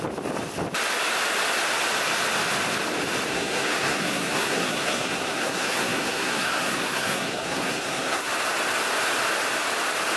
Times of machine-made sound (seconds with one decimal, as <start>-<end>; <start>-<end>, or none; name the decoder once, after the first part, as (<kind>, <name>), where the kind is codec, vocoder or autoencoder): 3.3-8.3 (codec, SNAC)